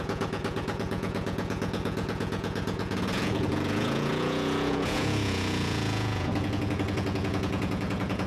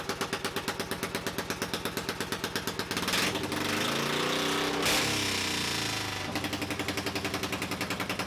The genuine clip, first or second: second